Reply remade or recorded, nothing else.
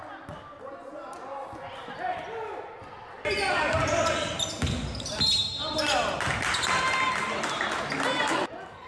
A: recorded